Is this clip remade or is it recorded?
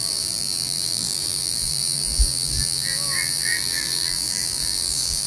remade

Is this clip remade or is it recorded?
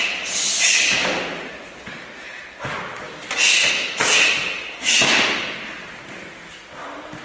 recorded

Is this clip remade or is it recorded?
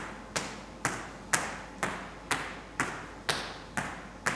recorded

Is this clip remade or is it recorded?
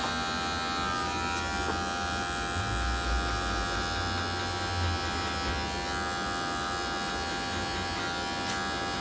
recorded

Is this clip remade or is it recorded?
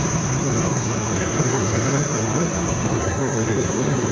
remade